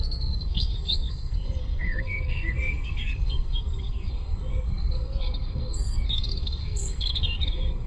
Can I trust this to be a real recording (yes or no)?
no